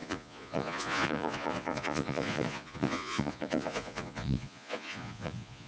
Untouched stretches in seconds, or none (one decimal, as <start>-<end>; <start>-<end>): none